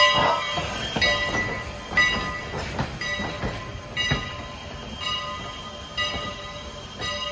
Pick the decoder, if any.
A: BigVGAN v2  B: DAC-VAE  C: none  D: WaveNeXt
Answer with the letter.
C